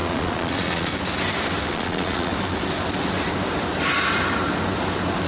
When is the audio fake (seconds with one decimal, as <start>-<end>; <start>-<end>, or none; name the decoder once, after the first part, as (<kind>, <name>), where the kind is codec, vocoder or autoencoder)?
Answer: 0.0-0.9 (vocoder, Vocos); 1.7-2.3